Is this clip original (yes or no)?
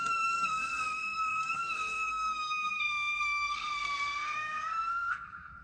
no